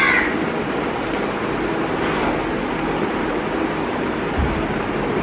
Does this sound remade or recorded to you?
recorded